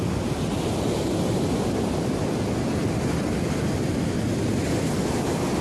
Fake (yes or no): no